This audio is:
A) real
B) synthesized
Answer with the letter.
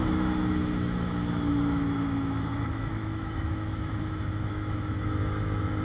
B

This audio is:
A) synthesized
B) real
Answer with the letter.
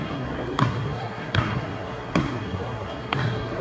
A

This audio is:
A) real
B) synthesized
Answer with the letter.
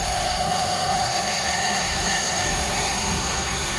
B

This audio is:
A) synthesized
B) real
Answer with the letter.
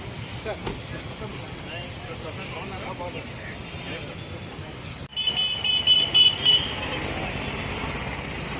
B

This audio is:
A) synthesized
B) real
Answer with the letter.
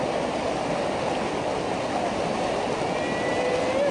B